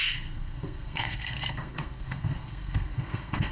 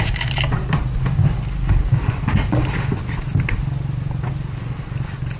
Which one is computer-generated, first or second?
first